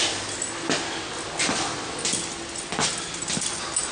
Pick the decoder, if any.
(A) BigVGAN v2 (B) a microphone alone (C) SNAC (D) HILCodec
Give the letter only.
B